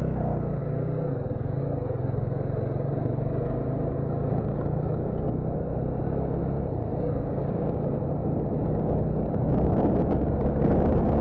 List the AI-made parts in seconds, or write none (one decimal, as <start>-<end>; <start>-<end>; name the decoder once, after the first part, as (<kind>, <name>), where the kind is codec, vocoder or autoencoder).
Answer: 0.0-5.7 (codec, DAC); 7.0-8.0; 8.5-11.2